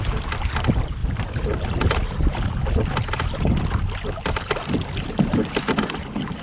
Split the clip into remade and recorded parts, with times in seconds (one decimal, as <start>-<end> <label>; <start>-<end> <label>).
0.0-6.4 recorded